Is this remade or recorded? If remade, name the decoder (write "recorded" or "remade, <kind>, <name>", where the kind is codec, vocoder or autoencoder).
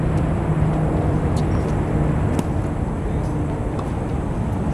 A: recorded